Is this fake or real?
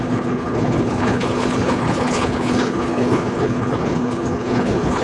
fake